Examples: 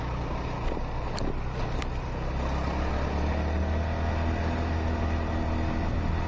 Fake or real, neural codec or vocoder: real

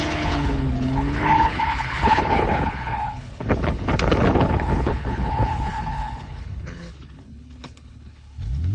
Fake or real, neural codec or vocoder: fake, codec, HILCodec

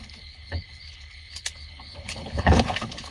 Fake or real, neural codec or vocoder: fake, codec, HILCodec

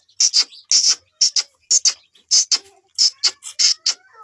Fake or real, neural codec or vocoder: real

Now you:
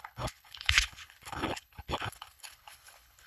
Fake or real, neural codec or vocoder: fake, codec, HILCodec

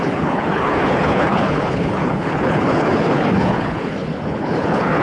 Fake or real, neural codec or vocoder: fake, codec, HILCodec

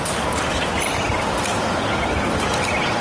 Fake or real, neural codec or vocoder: real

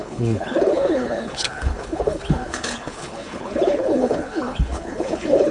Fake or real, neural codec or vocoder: fake, codec, HILCodec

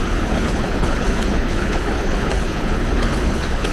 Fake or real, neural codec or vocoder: fake, codec, HILCodec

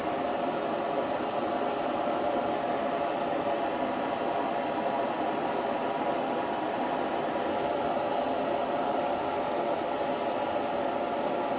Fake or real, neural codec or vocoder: real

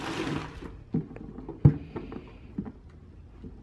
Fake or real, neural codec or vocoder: real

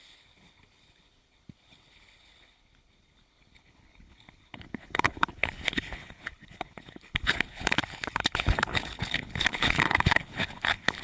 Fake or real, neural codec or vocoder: fake, codec, HILCodec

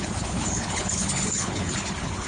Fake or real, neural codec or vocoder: fake, codec, HILCodec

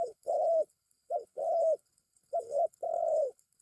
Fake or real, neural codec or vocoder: fake, codec, HILCodec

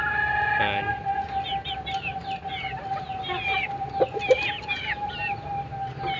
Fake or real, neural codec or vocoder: real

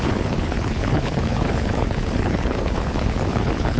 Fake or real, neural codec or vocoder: fake, codec, HILCodec